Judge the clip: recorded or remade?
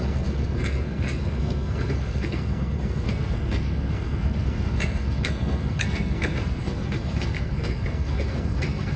remade